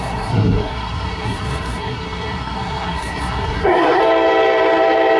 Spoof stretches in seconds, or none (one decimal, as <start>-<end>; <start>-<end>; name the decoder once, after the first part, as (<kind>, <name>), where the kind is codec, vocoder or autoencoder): 0.0-4.0 (codec, SNAC)